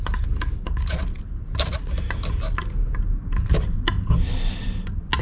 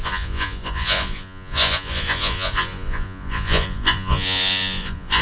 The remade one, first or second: second